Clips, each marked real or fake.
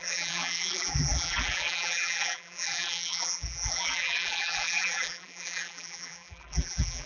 fake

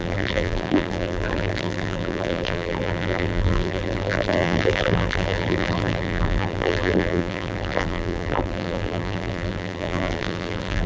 fake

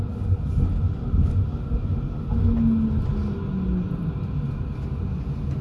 real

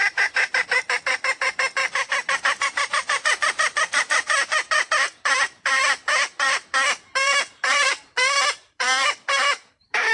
fake